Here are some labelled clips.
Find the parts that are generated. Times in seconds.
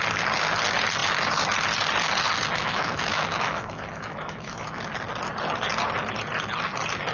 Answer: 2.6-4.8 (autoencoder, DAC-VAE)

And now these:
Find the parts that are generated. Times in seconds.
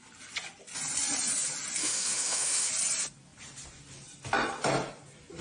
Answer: 1.8-2.7 (autoencoder, DAC-VAE)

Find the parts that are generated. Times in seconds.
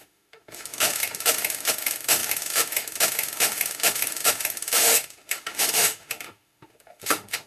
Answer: 0.0-7.5 (autoencoder, DAC-VAE)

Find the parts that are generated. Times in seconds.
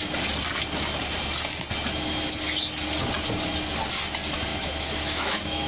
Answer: 4.5-5.7 (autoencoder, DAC-VAE)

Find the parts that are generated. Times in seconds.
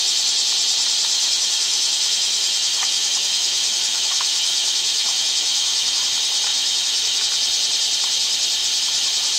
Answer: 1.1-6.0 (autoencoder, DAC-VAE); 6.5-7.2